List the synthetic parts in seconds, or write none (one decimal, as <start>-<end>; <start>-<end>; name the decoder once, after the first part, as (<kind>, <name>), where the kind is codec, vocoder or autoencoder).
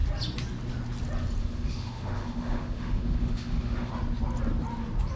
1.4-3.9 (autoencoder, DAC-VAE)